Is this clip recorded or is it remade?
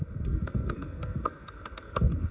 remade